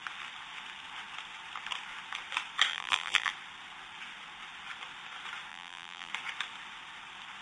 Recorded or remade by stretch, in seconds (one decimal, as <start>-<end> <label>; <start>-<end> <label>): 0.0-2.7 recorded; 2.7-3.3 remade; 3.3-5.5 recorded; 5.5-6.1 remade; 6.1-7.4 recorded

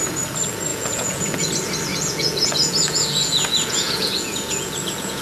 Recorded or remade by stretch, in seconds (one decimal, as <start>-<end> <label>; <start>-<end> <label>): 0.0-0.7 recorded; 0.7-1.5 remade; 1.5-1.9 recorded; 1.9-5.2 remade